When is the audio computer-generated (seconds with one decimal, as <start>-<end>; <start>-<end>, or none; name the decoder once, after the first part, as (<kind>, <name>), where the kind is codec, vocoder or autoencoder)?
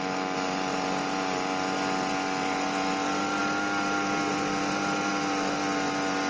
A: none